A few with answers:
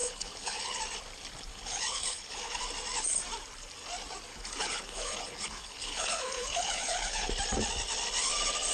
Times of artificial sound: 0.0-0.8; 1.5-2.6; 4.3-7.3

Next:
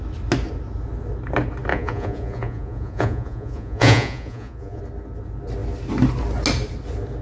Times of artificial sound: 1.7-4.8

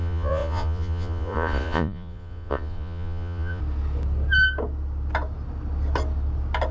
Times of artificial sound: 0.0-3.6

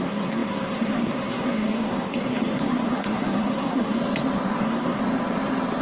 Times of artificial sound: 0.0-4.0; 4.6-5.0

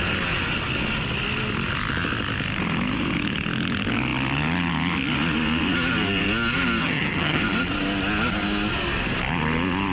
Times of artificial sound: 6.8-7.4